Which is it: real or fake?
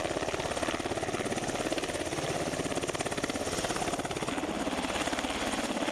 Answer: real